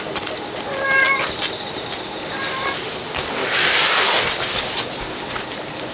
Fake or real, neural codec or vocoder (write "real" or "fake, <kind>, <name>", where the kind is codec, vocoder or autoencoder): real